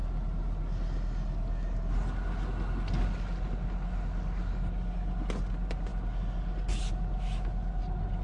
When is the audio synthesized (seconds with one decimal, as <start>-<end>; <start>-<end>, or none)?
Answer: none